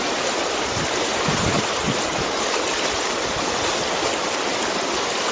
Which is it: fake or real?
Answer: real